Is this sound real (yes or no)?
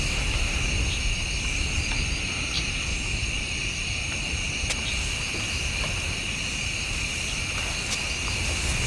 yes